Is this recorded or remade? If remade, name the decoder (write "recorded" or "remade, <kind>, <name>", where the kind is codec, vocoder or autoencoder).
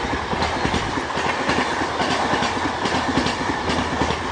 remade, vocoder, BigVGAN v2